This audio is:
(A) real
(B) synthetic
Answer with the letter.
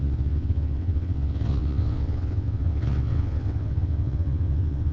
B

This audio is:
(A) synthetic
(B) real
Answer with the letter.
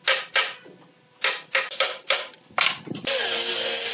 B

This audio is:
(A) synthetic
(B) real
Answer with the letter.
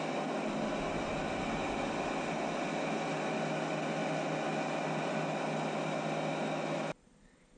B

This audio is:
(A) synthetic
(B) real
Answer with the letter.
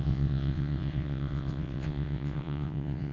A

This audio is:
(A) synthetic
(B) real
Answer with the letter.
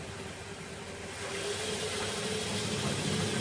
B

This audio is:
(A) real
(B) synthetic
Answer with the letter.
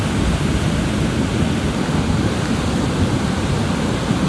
A